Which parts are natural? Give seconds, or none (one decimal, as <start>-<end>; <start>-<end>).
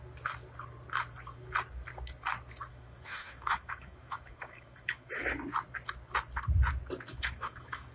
0.0-2.7; 5.2-7.1